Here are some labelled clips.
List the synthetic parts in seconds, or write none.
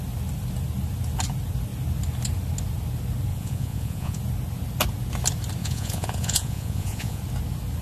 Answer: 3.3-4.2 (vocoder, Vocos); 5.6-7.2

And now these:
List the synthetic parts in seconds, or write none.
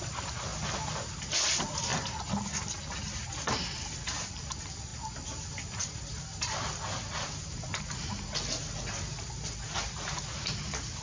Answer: 0.0-1.9 (vocoder, BigVGAN v2); 3.5-11.0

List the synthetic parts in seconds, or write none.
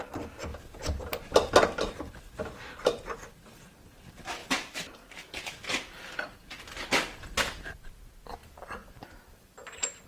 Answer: 0.5-1.5 (vocoder, BigVGAN v2); 4.4-6.7; 8.4-10.1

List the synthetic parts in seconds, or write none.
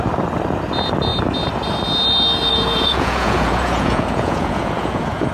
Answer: 2.5-5.3 (vocoder, Vocos)